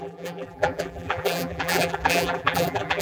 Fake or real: fake